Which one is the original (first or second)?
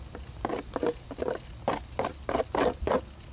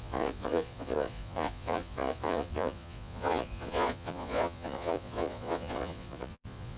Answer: first